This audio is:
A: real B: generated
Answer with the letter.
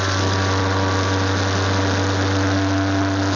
A